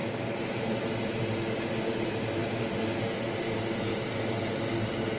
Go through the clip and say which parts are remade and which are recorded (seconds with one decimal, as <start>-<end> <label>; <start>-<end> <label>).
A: 0.0-5.2 recorded